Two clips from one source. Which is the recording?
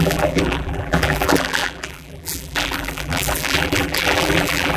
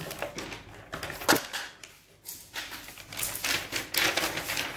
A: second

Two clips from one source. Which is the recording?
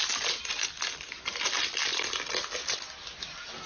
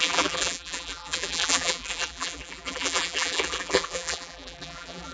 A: first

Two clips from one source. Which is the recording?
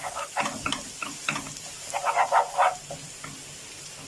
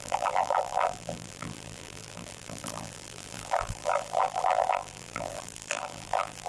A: first